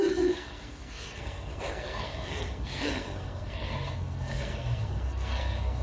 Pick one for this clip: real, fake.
fake